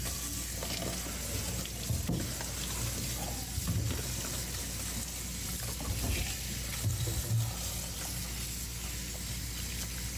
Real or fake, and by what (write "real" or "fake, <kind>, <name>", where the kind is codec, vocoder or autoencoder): real